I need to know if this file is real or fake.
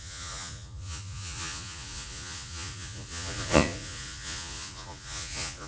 fake